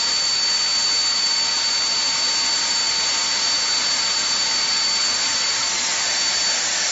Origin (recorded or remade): recorded